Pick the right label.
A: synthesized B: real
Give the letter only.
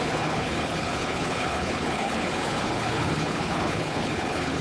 A